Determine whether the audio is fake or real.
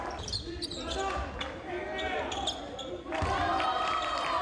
real